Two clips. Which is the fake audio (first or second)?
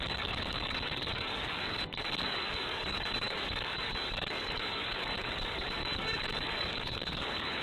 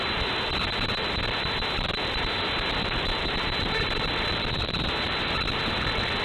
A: first